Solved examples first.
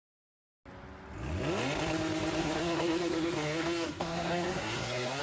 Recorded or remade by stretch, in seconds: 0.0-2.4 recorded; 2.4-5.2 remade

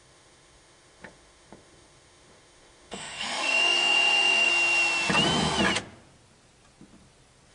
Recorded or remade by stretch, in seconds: 0.0-4.5 remade; 4.5-7.5 recorded

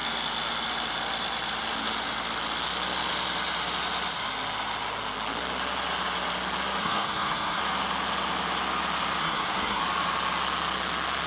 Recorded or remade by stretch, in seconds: 0.0-6.8 recorded; 6.8-7.6 remade; 7.6-9.2 recorded; 9.2-9.8 remade; 9.8-11.3 recorded